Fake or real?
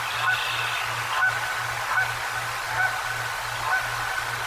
real